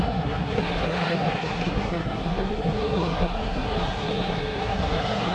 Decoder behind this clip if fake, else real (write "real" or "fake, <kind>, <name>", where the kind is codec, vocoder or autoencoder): fake, codec, SNAC